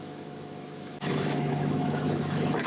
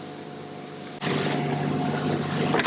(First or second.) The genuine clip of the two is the second